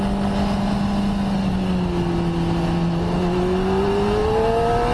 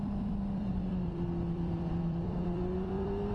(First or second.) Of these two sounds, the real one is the first